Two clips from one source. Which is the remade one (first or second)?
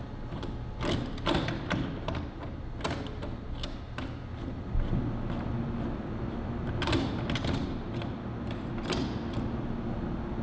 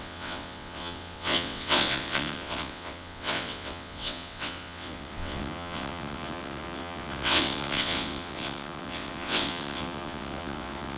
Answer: second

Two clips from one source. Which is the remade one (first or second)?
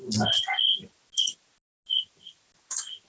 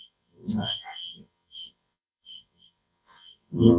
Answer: second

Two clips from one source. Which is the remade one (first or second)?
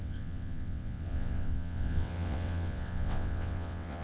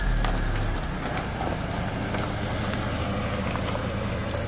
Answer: first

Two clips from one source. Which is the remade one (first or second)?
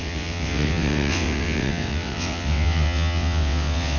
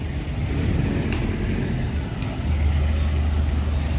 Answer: first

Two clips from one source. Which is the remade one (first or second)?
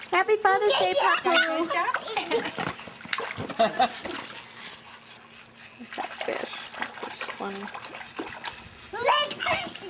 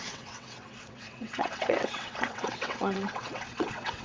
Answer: second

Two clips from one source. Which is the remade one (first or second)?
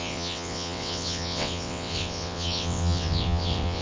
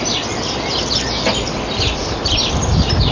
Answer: first